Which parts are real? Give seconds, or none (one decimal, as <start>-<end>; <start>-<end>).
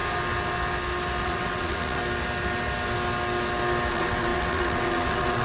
0.0-1.2; 2.0-3.9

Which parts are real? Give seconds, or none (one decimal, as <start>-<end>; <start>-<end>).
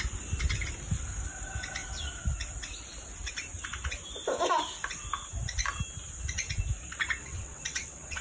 0.0-7.2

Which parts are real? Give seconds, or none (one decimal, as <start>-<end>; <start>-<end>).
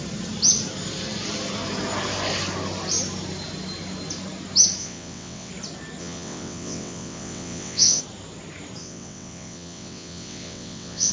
0.0-4.8; 5.5-6.0; 8.0-8.8